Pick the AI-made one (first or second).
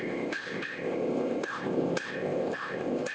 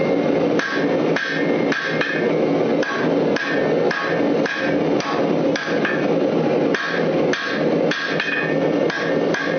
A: first